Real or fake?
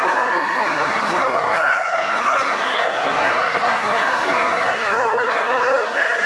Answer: fake